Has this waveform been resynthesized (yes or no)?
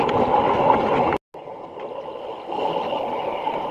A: no